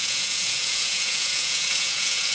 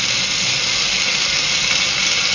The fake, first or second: first